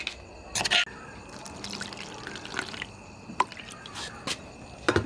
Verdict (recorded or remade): recorded